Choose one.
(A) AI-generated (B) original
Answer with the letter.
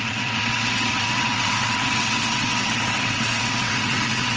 A